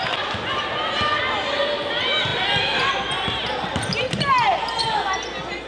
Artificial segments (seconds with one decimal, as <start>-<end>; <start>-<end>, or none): none